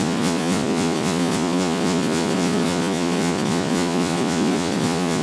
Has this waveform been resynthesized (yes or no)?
yes